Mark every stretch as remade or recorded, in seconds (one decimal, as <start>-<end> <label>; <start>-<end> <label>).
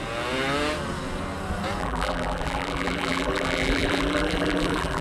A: 0.0-1.8 recorded; 1.8-5.0 remade